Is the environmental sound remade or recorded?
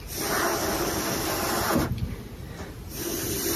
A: recorded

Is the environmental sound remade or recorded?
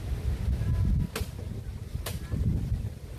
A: recorded